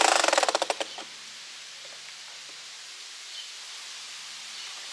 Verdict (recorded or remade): recorded